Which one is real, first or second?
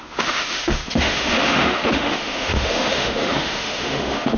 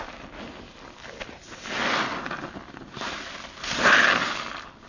second